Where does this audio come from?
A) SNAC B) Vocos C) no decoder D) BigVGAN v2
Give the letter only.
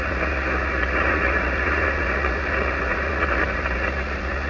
B